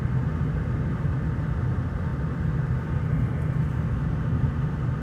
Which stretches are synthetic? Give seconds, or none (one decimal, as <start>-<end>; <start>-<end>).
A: none